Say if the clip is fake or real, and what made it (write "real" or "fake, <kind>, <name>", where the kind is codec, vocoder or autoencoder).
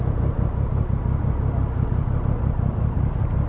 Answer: real